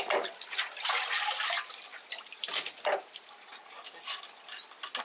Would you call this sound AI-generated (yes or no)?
no